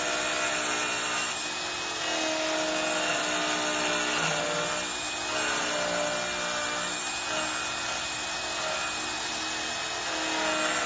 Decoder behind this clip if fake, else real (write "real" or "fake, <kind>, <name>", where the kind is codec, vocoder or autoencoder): real